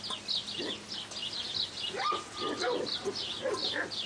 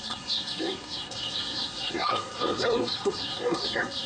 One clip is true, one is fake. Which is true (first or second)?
first